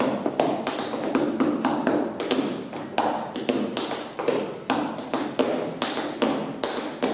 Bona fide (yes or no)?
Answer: yes